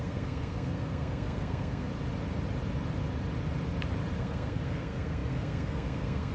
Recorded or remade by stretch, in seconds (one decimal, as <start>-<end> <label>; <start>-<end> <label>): 0.0-1.9 remade; 1.9-4.2 recorded; 4.2-6.3 remade